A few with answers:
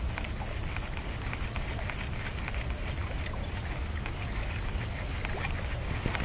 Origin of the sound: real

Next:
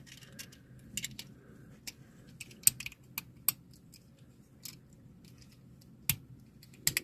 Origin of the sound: real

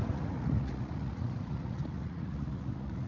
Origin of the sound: fake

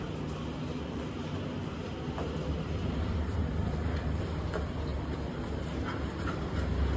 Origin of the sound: real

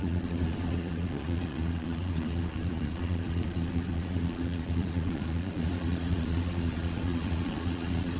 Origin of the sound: fake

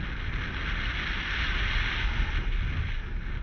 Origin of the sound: real